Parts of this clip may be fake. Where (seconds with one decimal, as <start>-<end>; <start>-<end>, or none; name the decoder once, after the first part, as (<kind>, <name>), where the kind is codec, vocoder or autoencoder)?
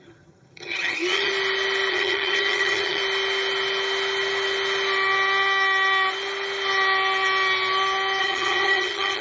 0.0-1.3 (vocoder, HiFi-GAN); 1.9-3.0; 8.2-9.2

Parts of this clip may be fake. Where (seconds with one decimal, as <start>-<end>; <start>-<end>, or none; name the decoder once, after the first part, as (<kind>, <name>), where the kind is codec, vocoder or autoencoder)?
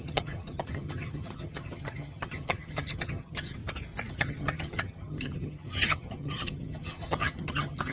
0.0-3.6 (vocoder, HiFi-GAN); 4.1-7.9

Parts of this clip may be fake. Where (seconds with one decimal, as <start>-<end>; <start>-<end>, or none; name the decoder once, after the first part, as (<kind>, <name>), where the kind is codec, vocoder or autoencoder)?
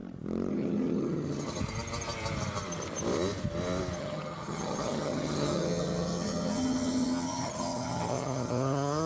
0.5-1.6 (vocoder, HiFi-GAN); 4.0-9.1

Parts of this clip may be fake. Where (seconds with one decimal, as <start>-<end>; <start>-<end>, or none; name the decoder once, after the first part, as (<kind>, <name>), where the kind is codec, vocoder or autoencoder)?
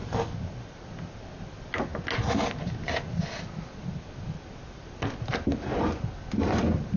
none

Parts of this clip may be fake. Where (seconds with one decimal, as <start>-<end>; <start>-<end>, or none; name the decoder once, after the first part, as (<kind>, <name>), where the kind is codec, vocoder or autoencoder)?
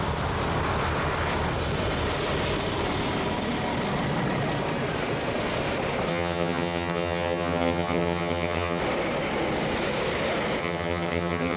6.1-8.8 (vocoder, HiFi-GAN); 10.6-11.6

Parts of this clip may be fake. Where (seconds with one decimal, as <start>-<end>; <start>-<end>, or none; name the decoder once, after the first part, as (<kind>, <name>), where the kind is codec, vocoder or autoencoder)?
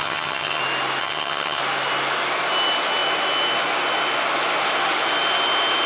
0.0-0.6 (vocoder, HiFi-GAN); 1.0-1.6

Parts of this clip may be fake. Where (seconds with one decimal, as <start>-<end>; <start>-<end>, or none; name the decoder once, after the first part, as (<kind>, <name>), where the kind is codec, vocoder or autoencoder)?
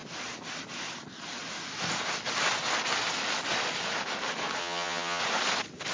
4.6-5.2 (vocoder, HiFi-GAN)